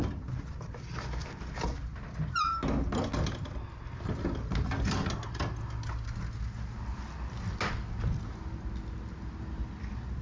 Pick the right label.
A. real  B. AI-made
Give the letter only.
A